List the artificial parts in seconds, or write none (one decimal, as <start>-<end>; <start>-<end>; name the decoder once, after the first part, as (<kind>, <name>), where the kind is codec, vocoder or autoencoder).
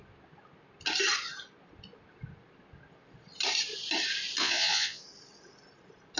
4.4-5.0 (vocoder, Vocos)